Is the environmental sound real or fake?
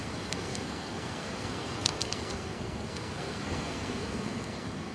fake